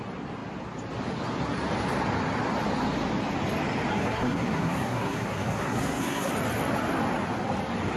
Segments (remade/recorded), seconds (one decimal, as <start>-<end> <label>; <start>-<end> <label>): 0.0-3.9 recorded; 3.9-6.3 remade; 6.3-8.0 recorded